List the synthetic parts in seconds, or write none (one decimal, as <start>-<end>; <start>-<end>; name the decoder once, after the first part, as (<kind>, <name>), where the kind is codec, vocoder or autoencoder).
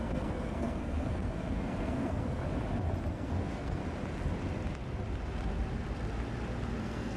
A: 0.0-2.4 (codec, SNAC); 3.1-3.8; 6.8-7.2